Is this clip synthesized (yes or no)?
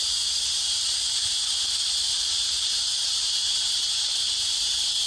yes